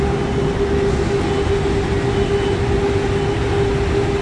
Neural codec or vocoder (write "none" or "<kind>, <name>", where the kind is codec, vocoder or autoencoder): none